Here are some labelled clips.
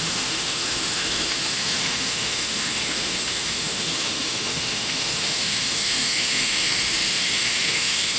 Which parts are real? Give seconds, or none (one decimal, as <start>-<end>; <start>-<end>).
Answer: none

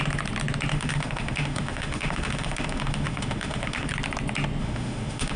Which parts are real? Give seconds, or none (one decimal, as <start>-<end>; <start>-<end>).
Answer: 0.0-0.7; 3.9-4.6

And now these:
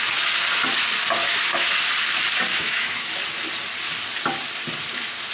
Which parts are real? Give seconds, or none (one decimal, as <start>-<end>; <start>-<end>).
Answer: 0.0-1.2; 1.7-2.5; 3.1-5.3